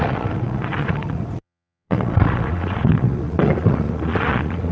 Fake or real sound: fake